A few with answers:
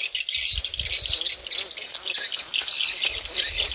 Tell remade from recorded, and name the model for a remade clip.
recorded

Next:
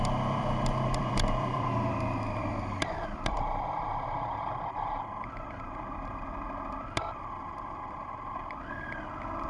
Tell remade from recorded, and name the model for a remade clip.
remade, vocoder, BigVGAN v2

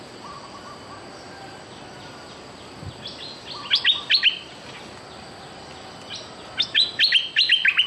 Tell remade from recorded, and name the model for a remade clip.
recorded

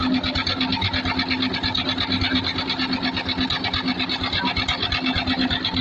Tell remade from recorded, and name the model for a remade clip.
recorded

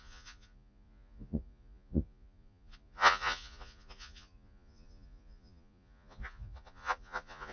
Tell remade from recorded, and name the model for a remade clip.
remade, vocoder, Vocos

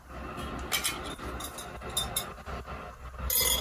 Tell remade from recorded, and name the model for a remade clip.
recorded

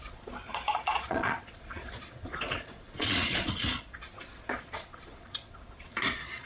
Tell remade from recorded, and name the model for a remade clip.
remade, vocoder, Vocos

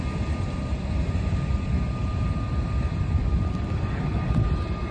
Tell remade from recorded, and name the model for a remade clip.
recorded